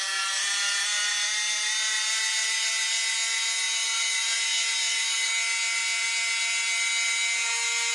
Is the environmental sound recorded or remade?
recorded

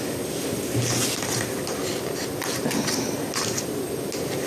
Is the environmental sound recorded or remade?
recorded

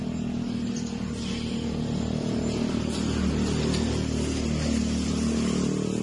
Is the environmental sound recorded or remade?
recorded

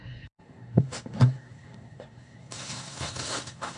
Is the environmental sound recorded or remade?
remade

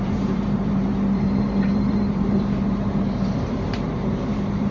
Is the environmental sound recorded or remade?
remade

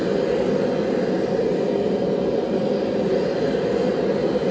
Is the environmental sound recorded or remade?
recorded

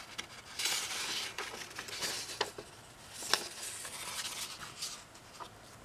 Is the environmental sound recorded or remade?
recorded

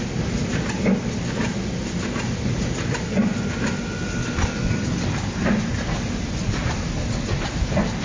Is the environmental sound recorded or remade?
recorded